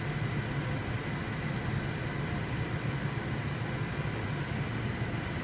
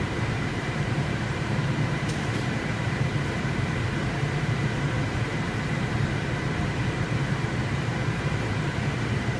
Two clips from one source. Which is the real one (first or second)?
first